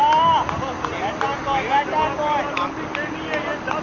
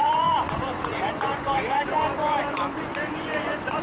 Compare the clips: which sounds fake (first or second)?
second